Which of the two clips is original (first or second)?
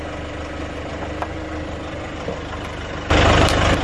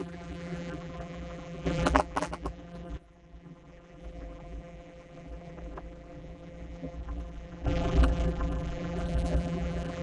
first